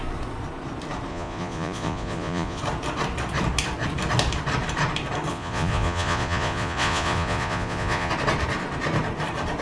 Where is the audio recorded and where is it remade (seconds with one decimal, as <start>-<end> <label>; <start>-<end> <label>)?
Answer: 0.0-1.1 recorded; 1.1-2.6 remade; 2.6-5.3 recorded; 5.3-8.1 remade; 8.1-9.6 recorded